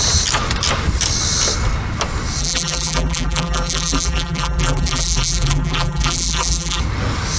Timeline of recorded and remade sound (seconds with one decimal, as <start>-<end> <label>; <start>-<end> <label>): 0.0-2.4 recorded; 2.4-6.8 remade; 6.8-7.4 recorded